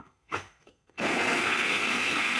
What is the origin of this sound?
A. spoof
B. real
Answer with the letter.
A